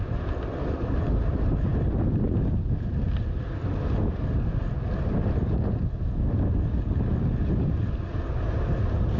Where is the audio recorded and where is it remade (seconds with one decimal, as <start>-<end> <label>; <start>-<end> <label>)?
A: 0.0-9.2 recorded